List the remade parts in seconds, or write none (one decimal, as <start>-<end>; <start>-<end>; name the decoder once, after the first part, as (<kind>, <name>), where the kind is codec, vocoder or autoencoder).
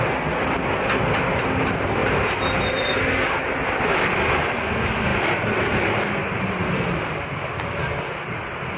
none